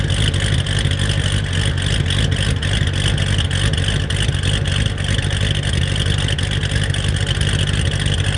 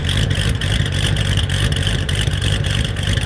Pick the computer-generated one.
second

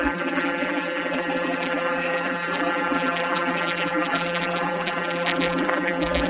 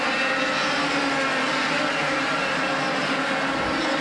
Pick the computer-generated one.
first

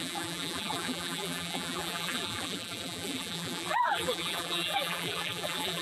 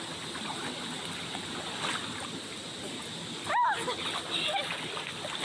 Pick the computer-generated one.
first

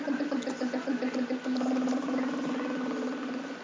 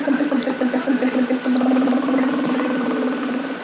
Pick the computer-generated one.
second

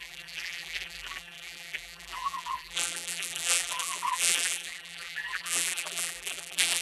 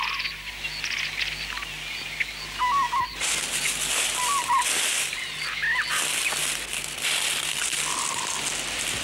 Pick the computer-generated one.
first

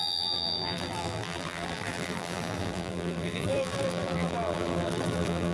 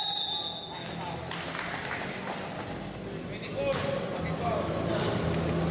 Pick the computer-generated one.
first